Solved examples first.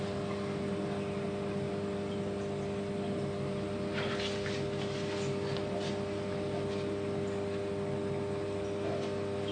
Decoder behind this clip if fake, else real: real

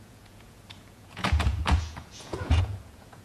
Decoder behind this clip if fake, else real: fake, vocoder, Vocos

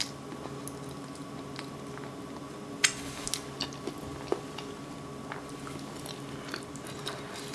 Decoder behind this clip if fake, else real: real